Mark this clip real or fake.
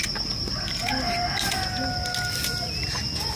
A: real